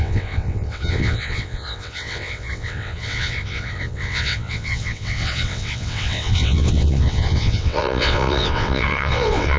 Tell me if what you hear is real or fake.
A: fake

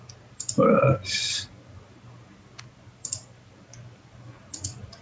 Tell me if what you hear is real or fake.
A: real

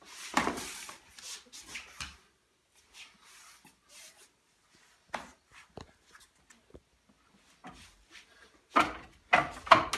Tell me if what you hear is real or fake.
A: real